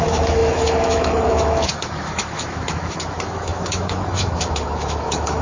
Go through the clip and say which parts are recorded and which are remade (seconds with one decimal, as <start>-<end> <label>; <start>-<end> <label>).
0.0-5.4 remade